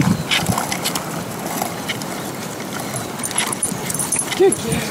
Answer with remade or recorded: remade